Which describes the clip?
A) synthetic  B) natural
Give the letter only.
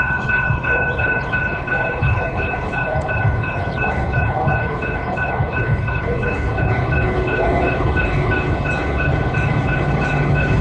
A